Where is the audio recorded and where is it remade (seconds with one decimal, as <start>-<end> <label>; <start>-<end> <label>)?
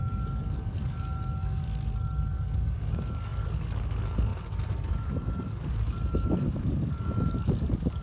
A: 0.0-1.6 remade; 1.6-2.3 recorded; 2.3-8.0 remade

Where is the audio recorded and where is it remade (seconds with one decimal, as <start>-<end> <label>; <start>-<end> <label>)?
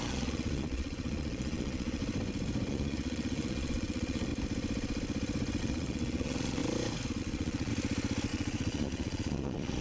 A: 0.0-2.0 remade; 2.0-2.7 recorded; 2.7-4.3 remade; 4.3-5.6 recorded; 5.6-6.6 remade; 6.6-7.2 recorded; 7.2-7.7 remade; 7.7-8.3 recorded; 8.3-9.8 remade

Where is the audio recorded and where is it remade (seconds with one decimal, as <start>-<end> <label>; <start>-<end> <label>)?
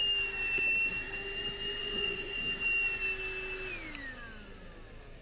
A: 0.0-1.8 recorded; 1.8-2.4 remade; 2.4-5.2 recorded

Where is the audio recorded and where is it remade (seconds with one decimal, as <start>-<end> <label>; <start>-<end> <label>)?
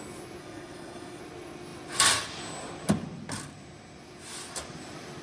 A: 0.0-0.4 recorded; 0.4-1.2 remade; 1.2-5.2 recorded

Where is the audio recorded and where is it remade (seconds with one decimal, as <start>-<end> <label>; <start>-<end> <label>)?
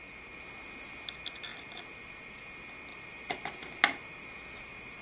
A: 0.0-1.5 recorded; 1.5-2.4 remade; 2.4-2.9 recorded; 2.9-3.8 remade; 3.8-5.0 recorded